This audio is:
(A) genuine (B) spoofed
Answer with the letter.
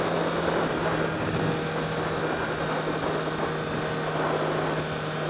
A